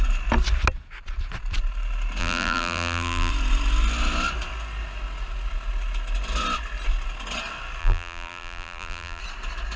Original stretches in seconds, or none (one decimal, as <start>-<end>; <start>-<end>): 0.0-2.2; 3.3-7.8; 9.2-9.8